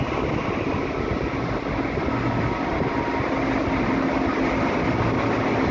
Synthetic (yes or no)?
no